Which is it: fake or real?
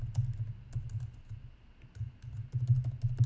real